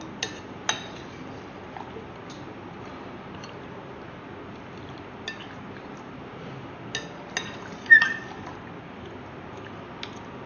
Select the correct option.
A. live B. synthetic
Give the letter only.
A